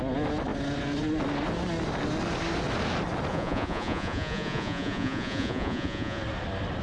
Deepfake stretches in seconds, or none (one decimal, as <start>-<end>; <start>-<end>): 3.3-6.2